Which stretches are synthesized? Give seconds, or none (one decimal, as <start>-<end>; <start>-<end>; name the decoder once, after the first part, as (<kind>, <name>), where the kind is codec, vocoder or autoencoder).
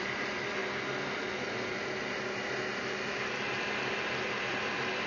0.0-0.6 (vocoder, BigVGAN v2); 3.7-5.1